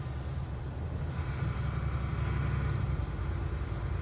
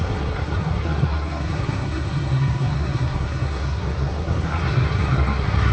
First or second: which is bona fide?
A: first